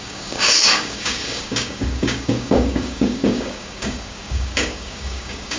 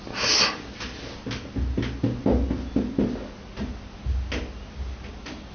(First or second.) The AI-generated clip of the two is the first